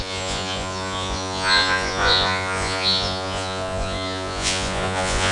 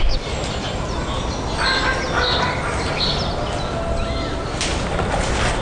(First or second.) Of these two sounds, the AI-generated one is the first